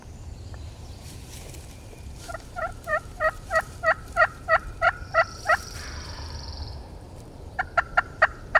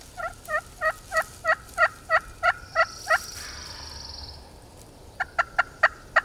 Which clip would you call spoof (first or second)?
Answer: first